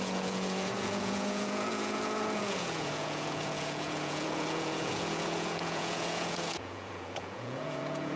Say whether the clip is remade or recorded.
remade